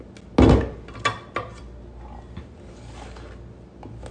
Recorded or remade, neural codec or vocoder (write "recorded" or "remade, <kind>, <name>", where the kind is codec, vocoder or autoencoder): recorded